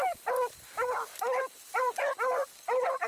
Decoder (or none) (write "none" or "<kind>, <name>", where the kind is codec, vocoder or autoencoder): none